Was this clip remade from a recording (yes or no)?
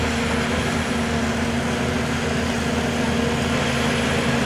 no